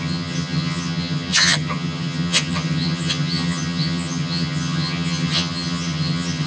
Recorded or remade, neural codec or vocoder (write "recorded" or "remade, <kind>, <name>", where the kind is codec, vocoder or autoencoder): remade, vocoder, HiFi-GAN